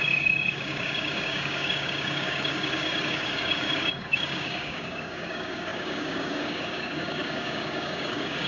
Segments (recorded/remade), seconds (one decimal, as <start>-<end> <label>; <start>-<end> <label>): 0.0-8.5 remade